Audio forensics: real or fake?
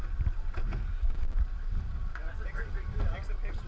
real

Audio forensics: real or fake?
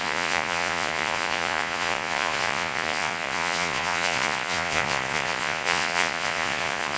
fake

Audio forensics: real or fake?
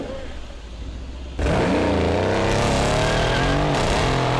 real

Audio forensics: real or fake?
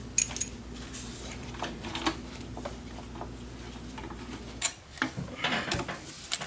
real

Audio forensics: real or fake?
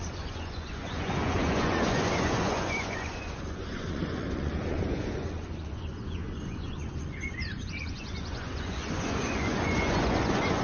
fake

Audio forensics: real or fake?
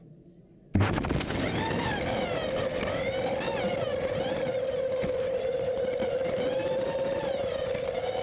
real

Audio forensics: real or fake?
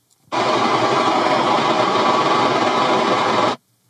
real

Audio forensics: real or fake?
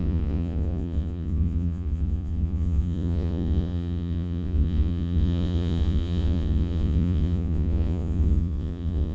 fake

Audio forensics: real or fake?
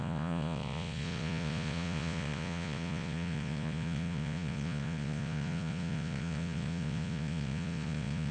fake